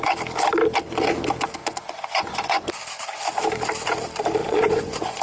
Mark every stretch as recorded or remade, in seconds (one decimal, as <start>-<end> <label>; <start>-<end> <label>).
0.0-1.6 recorded; 1.6-2.8 remade; 2.8-4.4 recorded; 4.4-5.2 remade